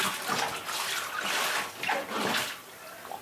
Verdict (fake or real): real